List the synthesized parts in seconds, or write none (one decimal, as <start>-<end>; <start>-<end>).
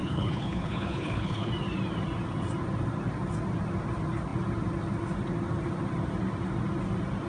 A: 0.0-1.5